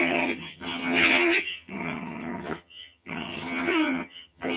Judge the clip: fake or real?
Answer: fake